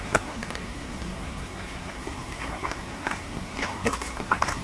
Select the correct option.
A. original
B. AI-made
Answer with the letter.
B